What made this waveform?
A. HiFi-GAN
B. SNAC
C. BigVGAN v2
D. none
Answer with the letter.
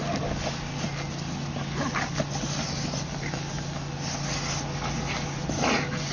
D